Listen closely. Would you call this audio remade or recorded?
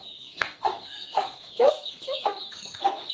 remade